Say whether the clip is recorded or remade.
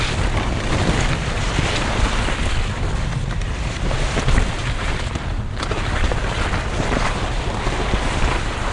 remade